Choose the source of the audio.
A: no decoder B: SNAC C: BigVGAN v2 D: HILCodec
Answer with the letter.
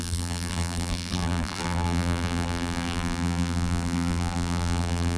C